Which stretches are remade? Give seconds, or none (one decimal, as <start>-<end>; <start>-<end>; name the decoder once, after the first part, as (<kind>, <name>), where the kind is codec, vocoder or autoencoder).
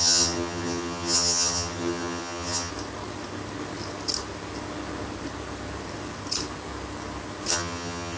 0.0-2.7 (vocoder, HiFi-GAN); 7.5-8.2